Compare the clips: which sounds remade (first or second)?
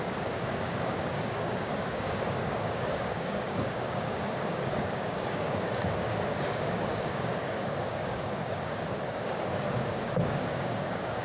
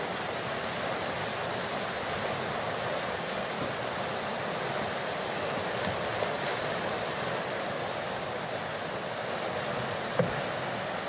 first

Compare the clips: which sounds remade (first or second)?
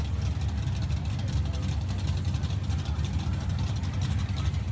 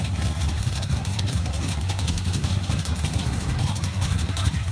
second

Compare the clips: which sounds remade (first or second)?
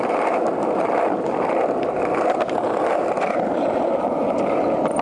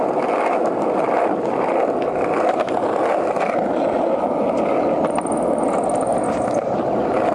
first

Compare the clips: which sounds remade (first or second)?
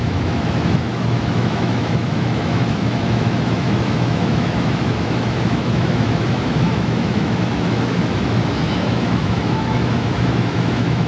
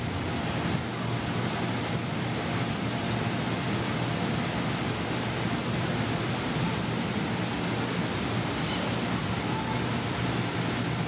first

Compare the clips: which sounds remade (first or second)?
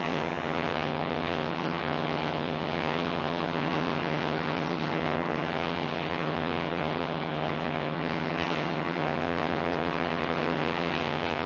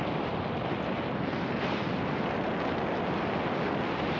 first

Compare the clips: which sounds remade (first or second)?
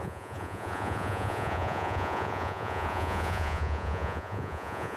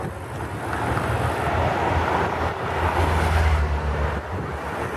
first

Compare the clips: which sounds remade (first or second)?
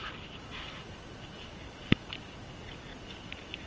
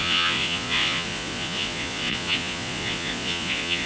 second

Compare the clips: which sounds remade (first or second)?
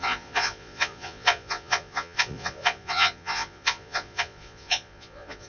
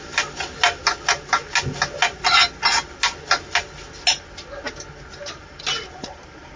first